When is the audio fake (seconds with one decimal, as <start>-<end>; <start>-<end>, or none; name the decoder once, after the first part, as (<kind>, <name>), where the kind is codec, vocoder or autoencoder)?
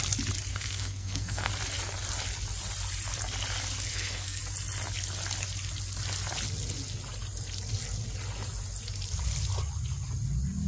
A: 0.5-1.5 (codec, SNAC); 3.9-4.4